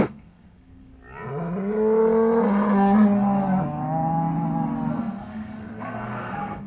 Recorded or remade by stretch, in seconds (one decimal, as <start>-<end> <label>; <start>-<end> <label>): 0.0-0.9 remade; 0.9-4.9 recorded; 4.9-6.7 remade